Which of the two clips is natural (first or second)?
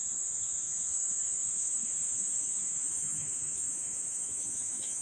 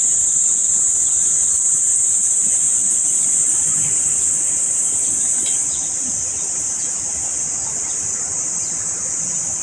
second